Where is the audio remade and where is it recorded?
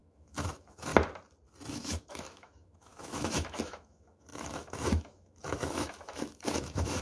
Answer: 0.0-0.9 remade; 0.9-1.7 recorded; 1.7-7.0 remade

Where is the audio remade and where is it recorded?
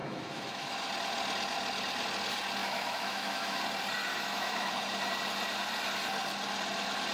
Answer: 0.0-0.9 remade; 0.9-2.6 recorded; 2.6-3.6 remade; 3.6-4.1 recorded; 4.1-4.7 remade; 4.7-7.1 recorded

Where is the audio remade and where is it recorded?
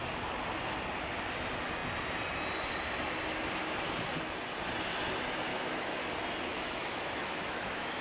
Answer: 0.0-5.5 recorded; 5.5-6.1 remade; 6.1-6.5 recorded; 6.5-8.0 remade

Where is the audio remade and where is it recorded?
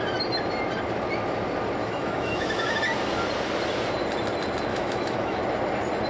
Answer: 0.0-1.8 recorded; 1.8-2.8 remade; 2.8-4.7 recorded; 4.7-5.4 remade; 5.4-6.1 recorded